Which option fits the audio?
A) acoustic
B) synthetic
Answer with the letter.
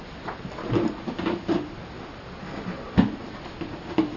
A